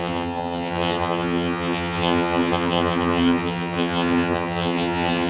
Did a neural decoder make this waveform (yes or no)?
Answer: yes